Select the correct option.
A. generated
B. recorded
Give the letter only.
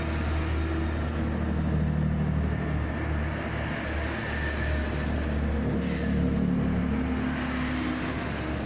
B